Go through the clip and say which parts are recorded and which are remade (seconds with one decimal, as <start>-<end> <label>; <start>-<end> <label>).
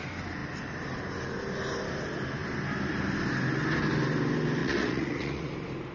0.0-4.6 recorded; 4.6-5.5 remade; 5.5-5.9 recorded